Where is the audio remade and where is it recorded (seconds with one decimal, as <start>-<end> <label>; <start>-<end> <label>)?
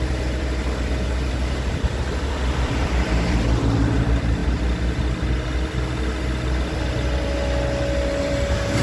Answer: 0.0-4.4 remade; 4.4-8.2 recorded; 8.2-8.8 remade